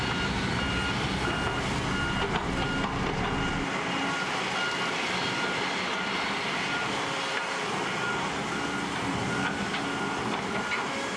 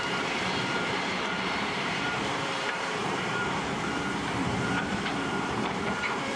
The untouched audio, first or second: first